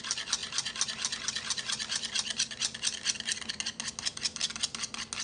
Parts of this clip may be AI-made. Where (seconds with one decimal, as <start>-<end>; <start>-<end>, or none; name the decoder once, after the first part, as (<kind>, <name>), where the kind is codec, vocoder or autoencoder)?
none